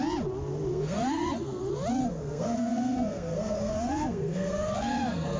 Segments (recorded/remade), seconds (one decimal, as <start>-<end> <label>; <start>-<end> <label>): 0.0-0.7 recorded; 0.7-1.6 remade; 1.6-2.0 recorded; 2.0-5.4 remade